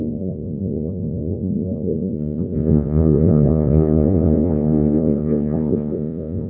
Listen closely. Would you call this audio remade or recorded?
remade